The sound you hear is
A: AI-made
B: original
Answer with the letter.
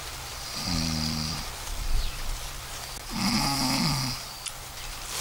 B